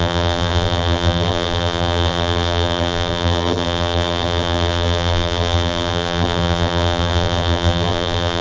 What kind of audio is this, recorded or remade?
remade